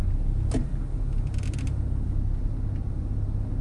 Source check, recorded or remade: recorded